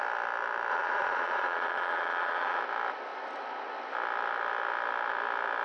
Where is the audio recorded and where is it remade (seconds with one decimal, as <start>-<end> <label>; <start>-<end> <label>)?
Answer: 0.0-0.7 recorded; 0.7-2.6 remade; 2.6-5.6 recorded